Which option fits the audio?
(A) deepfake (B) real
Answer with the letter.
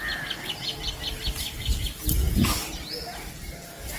B